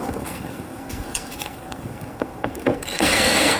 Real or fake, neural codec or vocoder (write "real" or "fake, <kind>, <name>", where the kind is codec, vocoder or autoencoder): fake, codec, SNAC